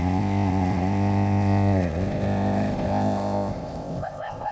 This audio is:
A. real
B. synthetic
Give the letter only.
B